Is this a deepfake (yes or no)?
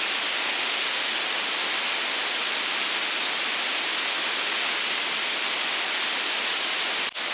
no